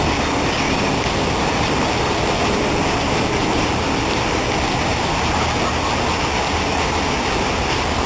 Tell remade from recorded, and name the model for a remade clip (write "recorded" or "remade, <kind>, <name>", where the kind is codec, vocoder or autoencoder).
recorded